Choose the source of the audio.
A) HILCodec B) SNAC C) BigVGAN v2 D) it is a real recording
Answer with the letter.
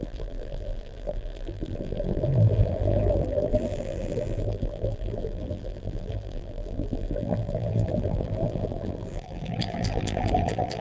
C